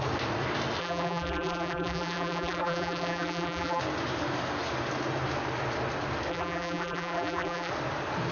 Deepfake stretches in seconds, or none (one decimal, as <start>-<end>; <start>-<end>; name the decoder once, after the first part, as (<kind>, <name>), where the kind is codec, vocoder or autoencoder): 0.8-3.8 (vocoder, BigVGAN v2); 6.3-7.7